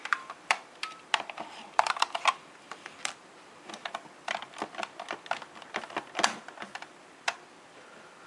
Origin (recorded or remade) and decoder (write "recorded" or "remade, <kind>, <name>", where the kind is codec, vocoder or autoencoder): remade, vocoder, BigVGAN v2